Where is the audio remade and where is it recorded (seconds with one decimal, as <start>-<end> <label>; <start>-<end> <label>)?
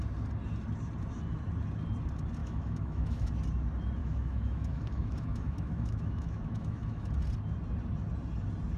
0.0-2.4 recorded; 2.4-3.3 remade; 3.3-4.0 recorded; 4.0-7.1 remade; 7.1-8.8 recorded